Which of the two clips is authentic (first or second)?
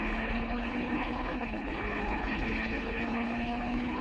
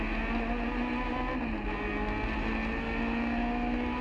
second